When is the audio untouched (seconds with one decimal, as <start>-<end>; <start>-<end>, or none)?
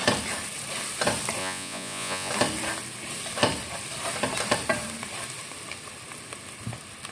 0.0-1.4; 2.3-7.1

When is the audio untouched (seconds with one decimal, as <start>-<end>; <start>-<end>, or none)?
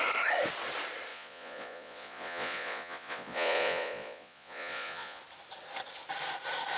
0.0-1.1; 5.2-6.8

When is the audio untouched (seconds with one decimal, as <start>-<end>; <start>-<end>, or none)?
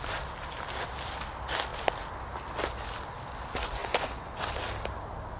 0.0-3.8; 4.4-5.4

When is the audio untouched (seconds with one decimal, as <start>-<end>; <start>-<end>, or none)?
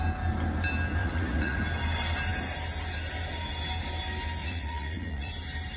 0.0-1.0; 1.6-4.4; 5.3-5.8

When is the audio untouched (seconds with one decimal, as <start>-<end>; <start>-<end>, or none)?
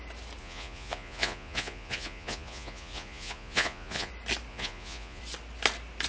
0.0-0.4; 4.1-4.5; 5.2-6.1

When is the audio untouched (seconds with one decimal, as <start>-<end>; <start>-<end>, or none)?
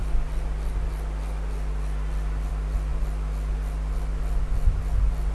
0.0-5.3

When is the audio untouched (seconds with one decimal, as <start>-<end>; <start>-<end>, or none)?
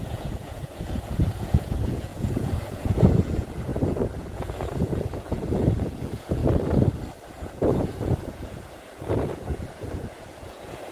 3.7-4.3; 6.4-7.3